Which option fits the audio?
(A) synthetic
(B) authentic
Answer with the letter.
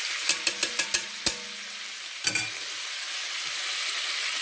B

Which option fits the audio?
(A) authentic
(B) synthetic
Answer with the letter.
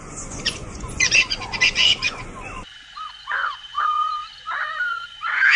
B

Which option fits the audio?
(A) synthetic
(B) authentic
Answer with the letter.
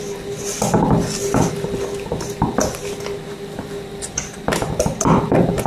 B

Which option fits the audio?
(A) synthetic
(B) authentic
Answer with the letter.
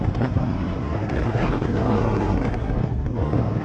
A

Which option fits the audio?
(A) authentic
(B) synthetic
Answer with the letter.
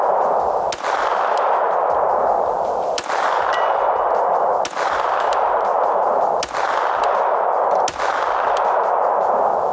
A